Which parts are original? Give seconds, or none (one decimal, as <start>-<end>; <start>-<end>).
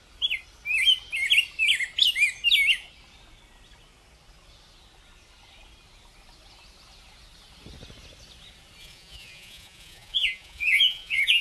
0.0-8.8